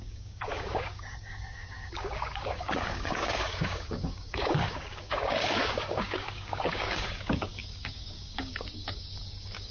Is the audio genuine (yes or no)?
no